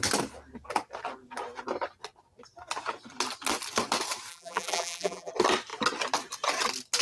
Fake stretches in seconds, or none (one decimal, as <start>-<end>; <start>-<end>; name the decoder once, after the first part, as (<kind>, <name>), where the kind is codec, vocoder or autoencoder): 4.3-5.3 (vocoder, BigVGAN v2)